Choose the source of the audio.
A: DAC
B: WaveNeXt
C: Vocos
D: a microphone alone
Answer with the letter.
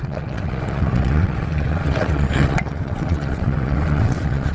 B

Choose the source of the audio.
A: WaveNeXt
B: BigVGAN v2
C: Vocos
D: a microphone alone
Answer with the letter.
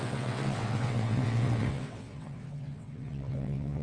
A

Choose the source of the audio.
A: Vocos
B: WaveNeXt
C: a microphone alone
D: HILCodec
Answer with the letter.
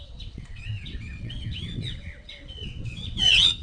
B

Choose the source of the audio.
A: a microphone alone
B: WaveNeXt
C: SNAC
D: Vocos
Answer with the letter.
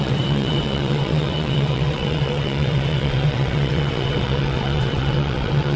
B